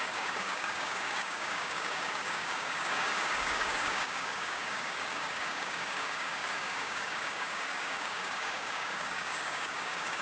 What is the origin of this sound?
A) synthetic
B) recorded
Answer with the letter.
A